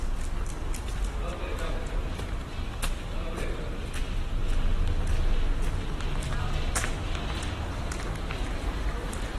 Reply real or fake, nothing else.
real